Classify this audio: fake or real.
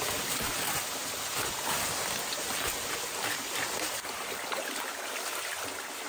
real